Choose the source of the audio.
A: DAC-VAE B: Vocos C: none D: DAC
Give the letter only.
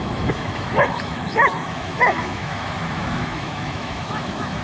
A